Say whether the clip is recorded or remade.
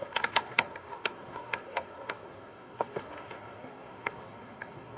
remade